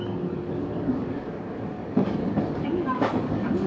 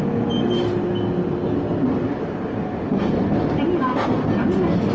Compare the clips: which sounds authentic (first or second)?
second